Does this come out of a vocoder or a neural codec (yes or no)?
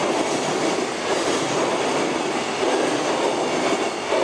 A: no